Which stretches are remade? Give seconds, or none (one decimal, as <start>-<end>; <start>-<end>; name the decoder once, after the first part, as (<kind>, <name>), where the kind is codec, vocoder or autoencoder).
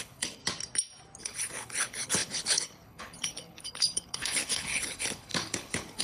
0.0-0.4 (codec, HILCodec); 1.2-6.0